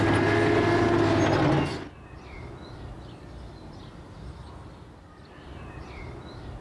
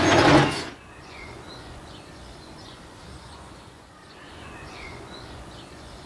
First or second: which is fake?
second